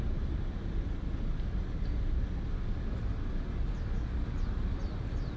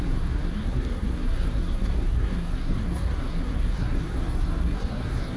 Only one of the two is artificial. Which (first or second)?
second